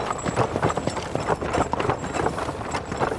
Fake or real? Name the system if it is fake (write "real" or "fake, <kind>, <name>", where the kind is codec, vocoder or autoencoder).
fake, vocoder, BigVGAN v2